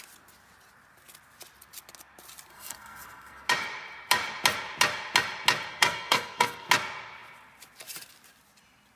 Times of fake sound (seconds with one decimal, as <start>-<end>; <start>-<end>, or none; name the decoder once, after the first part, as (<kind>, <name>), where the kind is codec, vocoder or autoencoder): 2.5-3.5 (codec, SNAC); 5.7-6.7